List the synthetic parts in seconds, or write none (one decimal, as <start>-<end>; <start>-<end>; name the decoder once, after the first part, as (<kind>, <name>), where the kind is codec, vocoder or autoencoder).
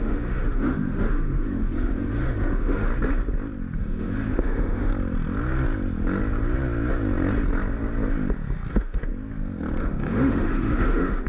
0.0-2.9 (autoencoder, DAC-VAE); 3.8-4.9; 8.7-9.1; 9.8-11.3